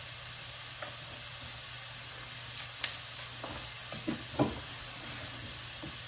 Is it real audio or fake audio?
real